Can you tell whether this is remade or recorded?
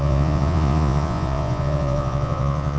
remade